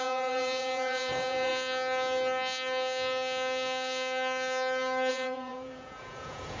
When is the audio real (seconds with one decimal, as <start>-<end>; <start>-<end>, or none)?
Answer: 1.5-5.1